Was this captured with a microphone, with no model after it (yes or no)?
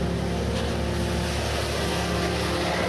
yes